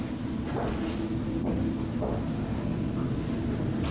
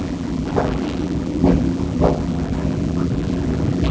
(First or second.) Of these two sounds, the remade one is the second